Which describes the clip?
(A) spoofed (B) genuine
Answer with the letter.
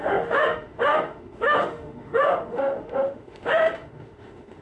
A